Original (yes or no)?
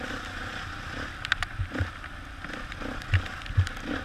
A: yes